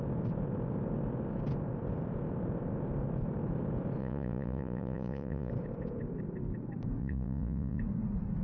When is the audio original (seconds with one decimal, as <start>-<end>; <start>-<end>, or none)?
0.0-4.0; 5.5-7.0; 7.8-8.4